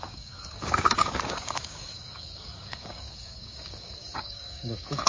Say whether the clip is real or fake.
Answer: fake